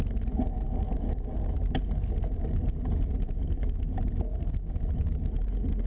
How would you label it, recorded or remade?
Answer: recorded